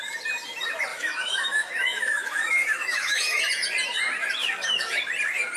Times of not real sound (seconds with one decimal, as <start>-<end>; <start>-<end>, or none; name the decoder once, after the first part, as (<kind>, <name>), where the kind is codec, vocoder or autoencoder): 0.9-3.4 (autoencoder, DAC-VAE); 4.4-5.0